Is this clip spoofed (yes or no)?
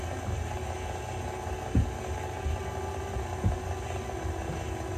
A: no